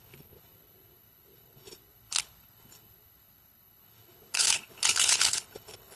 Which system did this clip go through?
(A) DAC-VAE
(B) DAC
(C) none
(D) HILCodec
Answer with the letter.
D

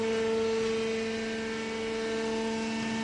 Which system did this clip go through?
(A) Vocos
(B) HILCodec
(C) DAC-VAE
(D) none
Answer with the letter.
D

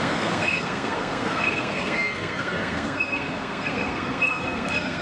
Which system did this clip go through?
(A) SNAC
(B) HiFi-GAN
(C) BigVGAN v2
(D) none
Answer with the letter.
A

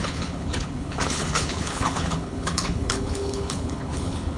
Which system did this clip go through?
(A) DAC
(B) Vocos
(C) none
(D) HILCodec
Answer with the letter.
D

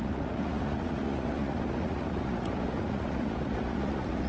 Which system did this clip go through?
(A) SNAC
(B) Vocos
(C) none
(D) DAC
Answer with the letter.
B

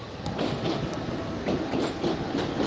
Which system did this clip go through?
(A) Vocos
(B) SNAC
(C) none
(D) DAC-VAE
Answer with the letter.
C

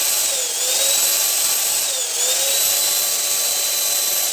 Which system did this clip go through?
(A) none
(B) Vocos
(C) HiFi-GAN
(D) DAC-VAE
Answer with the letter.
A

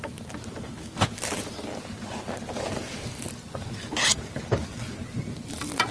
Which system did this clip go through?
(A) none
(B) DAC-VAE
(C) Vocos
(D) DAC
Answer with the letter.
A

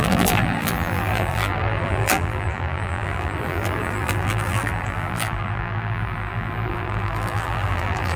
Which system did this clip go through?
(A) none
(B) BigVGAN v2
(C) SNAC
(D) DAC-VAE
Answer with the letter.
B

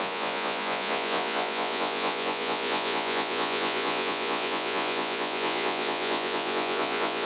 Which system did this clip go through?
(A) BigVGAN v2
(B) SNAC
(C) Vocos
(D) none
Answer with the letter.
C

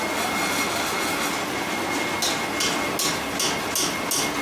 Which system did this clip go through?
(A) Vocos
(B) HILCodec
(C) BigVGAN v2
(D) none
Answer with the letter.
D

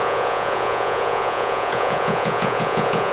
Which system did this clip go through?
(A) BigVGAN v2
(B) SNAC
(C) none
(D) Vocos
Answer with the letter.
D